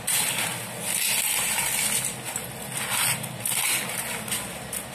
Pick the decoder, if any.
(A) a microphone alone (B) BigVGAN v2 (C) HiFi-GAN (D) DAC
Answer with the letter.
A